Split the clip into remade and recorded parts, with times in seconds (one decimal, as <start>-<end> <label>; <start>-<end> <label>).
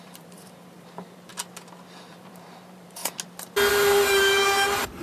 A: 0.0-1.3 remade; 1.3-2.1 recorded; 2.1-3.0 remade; 3.0-3.7 recorded; 3.7-5.0 remade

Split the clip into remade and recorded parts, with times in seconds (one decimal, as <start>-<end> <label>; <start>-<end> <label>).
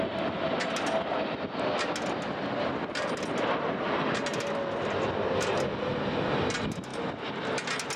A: 0.0-8.0 recorded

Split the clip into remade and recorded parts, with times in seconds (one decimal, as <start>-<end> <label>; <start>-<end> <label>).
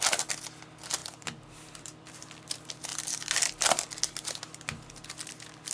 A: 0.0-1.0 recorded; 1.0-2.4 remade; 2.4-2.9 recorded; 2.9-5.3 remade; 5.3-5.7 recorded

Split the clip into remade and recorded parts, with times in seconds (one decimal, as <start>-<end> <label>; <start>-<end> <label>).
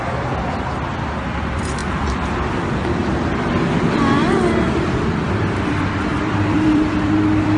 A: 0.0-6.1 recorded; 6.1-7.6 remade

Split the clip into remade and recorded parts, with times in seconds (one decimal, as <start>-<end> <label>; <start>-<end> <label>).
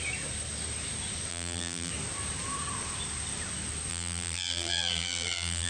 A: 0.0-1.3 recorded; 1.3-1.9 remade; 1.9-3.9 recorded; 3.9-5.7 remade